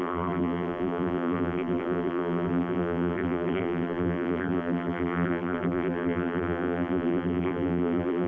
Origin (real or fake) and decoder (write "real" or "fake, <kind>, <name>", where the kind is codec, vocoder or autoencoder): fake, vocoder, BigVGAN v2